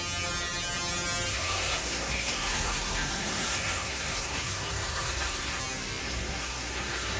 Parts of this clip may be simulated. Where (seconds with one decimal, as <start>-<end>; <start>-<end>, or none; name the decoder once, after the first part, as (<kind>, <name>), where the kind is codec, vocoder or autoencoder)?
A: 1.3-5.6 (codec, SNAC); 6.0-7.2